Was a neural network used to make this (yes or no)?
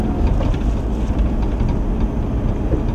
no